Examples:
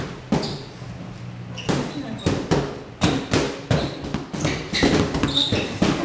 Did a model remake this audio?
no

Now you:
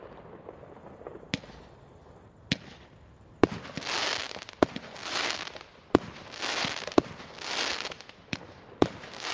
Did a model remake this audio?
no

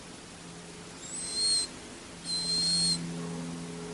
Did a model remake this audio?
no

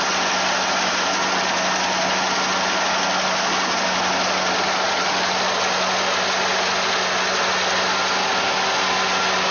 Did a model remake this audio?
no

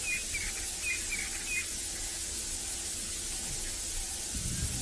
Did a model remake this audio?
no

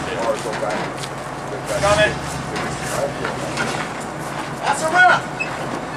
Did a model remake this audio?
no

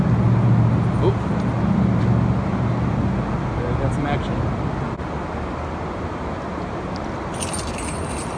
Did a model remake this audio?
no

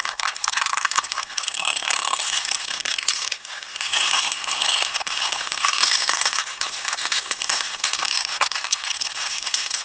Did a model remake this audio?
yes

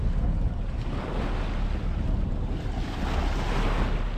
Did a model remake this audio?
no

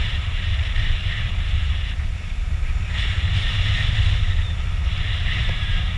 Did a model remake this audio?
no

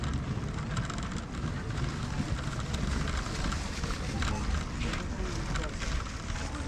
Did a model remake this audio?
no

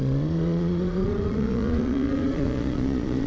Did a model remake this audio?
yes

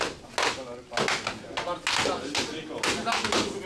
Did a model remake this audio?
no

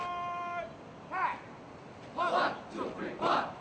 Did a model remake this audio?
no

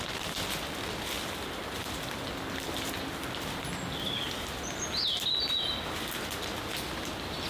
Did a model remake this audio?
no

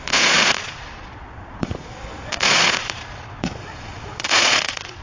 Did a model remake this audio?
yes